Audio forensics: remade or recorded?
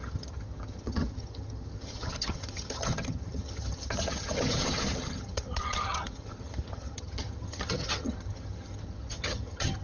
remade